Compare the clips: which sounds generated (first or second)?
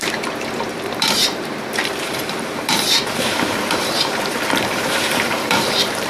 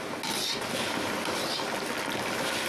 first